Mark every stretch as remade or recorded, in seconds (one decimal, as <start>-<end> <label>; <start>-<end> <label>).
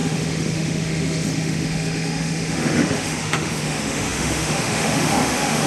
0.0-5.7 remade